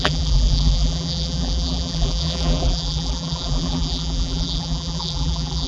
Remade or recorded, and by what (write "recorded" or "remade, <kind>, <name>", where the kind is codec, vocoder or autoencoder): remade, vocoder, BigVGAN v2